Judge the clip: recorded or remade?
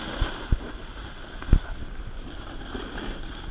recorded